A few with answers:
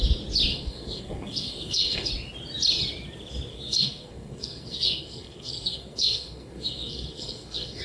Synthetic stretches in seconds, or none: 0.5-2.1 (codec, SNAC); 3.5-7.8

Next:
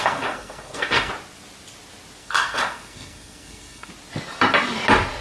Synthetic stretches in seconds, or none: 0.0-1.1 (codec, SNAC); 2.2-3.9

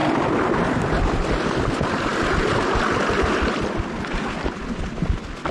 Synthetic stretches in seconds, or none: none

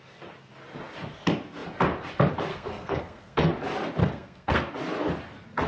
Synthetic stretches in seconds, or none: 2.5-3.5 (codec, SNAC); 4.0-4.7

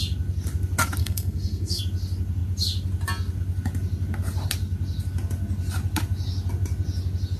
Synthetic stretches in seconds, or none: 1.0-1.8 (codec, SNAC)

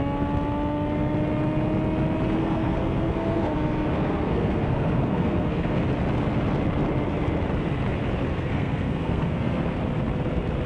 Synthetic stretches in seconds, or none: 2.4-5.8 (codec, SNAC); 8.3-9.6

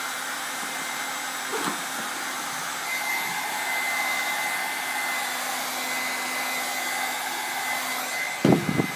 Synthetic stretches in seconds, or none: none